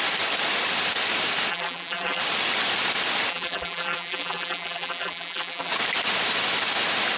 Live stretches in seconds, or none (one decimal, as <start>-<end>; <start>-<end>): 0.0-1.5; 2.2-3.3; 5.7-7.2